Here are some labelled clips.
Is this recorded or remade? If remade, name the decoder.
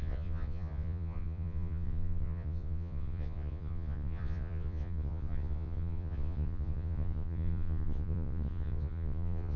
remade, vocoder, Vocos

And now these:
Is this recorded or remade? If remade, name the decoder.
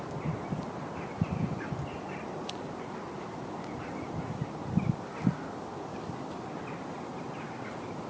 recorded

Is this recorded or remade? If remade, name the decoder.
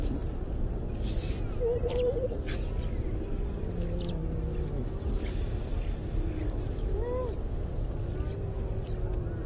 recorded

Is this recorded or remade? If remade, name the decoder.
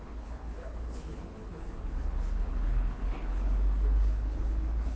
remade, codec, HILCodec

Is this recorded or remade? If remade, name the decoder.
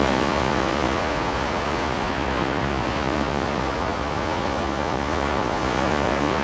remade, vocoder, Vocos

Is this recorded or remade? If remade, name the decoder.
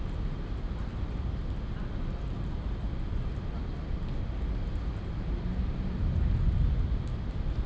recorded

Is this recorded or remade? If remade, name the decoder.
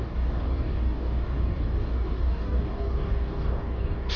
remade, codec, DAC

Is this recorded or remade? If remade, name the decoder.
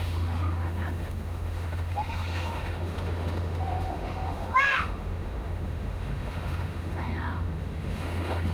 remade, autoencoder, DAC-VAE